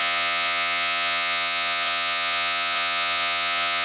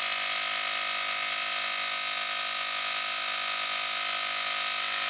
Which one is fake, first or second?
first